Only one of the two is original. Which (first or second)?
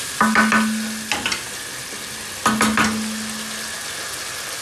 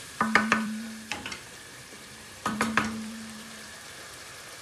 first